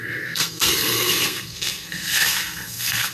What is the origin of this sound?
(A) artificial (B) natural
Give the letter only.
A